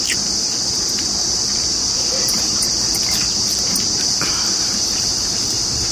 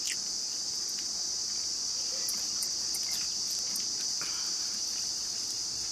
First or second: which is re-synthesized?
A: first